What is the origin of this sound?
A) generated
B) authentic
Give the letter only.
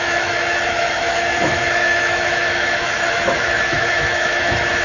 A